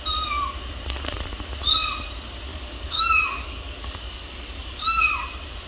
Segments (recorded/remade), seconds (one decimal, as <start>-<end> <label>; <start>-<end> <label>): 0.0-2.5 recorded; 2.5-5.0 remade; 5.0-5.7 recorded